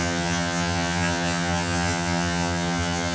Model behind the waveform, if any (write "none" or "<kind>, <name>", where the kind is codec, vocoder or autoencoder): vocoder, HiFi-GAN